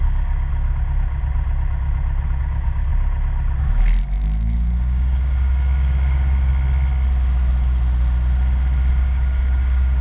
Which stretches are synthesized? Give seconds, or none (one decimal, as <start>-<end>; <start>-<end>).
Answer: 0.0-0.5; 2.4-2.9; 3.6-6.5; 8.9-10.0